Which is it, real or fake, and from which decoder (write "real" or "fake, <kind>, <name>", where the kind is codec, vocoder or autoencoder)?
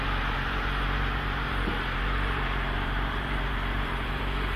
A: fake, vocoder, BigVGAN v2